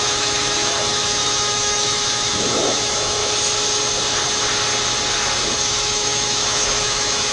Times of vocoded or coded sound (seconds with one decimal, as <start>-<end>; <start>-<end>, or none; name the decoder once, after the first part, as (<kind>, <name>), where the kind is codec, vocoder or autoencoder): 0.0-3.2 (autoencoder, DAC-VAE); 5.6-7.3